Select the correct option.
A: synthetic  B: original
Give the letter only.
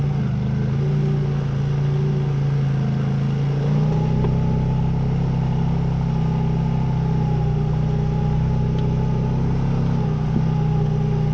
B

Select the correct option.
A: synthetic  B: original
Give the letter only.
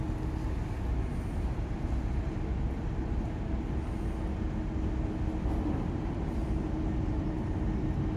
B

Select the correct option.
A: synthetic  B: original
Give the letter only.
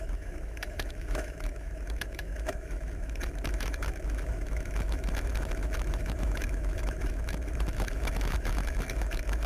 A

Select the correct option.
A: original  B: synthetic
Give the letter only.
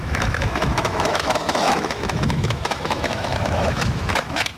B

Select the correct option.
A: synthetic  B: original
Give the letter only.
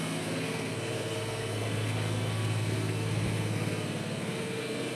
A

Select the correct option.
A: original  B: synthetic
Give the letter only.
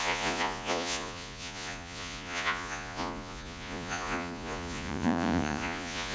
B